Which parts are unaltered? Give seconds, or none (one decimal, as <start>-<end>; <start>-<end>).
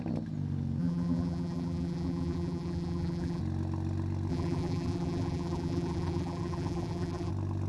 0.0-0.8; 3.4-4.3; 7.3-7.7